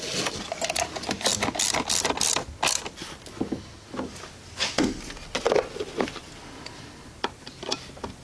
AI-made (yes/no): no